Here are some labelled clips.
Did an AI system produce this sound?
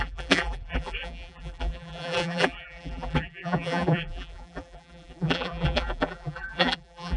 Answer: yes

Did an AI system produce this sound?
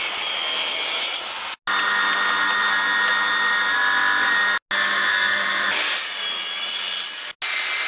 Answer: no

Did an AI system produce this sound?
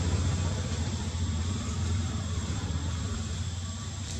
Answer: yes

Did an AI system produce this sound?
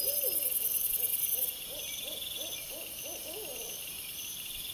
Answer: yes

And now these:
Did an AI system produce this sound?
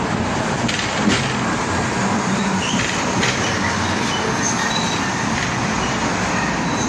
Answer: no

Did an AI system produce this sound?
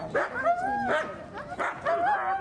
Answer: no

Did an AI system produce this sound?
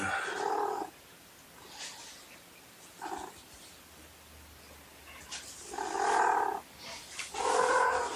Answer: no